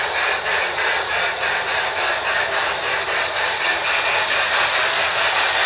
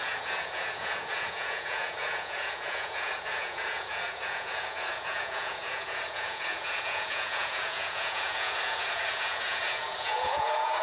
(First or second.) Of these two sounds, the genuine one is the first